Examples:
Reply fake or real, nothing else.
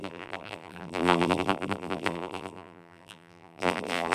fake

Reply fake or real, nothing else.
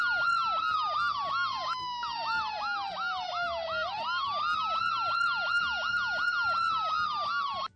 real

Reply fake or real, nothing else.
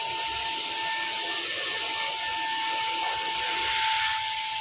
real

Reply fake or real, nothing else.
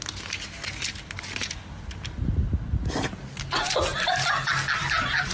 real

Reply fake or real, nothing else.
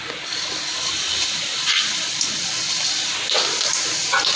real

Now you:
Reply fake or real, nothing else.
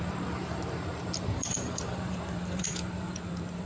fake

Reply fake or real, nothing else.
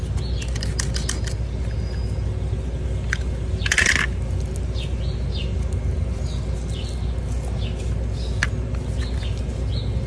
real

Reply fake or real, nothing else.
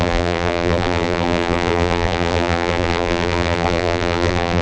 fake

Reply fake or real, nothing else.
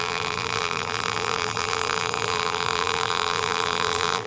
fake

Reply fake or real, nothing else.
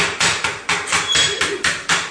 real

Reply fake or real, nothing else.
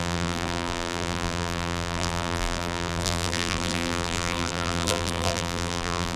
fake